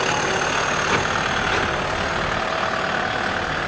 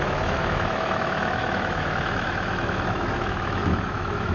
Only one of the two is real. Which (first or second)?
first